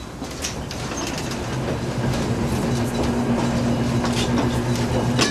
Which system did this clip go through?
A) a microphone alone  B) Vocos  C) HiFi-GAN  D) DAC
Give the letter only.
A